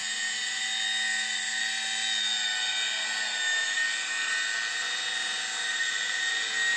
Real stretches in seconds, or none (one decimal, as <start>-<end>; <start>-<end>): 0.0-6.8